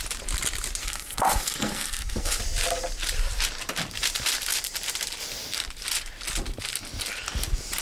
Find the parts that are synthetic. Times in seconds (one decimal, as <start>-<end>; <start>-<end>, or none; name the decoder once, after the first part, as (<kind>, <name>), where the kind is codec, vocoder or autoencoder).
0.8-2.4 (codec, SNAC)